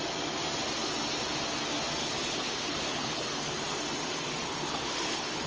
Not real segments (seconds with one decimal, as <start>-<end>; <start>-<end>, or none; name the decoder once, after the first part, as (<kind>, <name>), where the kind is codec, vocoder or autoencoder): 2.0-3.6 (codec, HILCodec); 4.4-5.5